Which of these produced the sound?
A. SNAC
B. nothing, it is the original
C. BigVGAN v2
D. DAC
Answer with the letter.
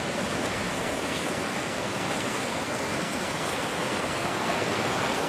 A